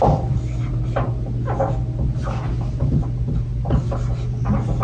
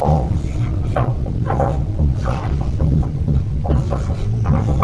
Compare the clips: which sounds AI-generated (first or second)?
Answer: second